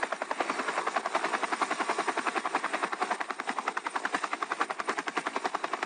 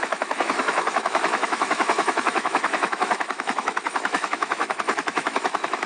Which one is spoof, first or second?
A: second